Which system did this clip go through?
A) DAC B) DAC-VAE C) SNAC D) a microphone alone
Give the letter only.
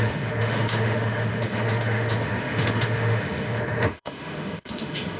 B